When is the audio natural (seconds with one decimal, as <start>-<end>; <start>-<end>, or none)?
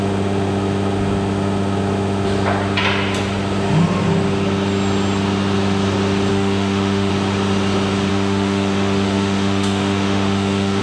0.0-6.3; 7.1-8.1